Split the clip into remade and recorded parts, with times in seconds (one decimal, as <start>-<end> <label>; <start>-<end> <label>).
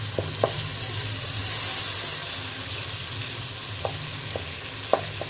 0.0-5.3 recorded